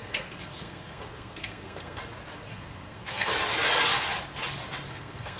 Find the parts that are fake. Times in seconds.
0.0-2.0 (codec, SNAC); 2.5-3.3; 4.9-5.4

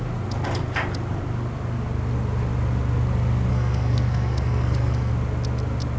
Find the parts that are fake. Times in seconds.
3.5-5.1 (codec, SNAC)

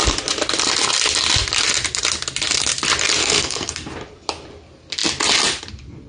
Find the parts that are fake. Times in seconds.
3.2-3.9 (codec, SNAC)

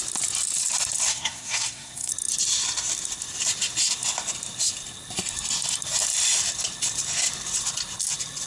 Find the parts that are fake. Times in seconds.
1.1-2.1 (codec, SNAC)